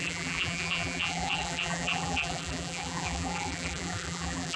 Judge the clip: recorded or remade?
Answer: remade